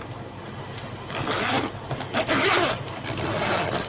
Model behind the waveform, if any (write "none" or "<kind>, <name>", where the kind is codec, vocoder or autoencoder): none